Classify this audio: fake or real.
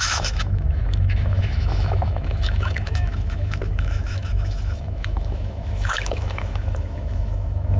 fake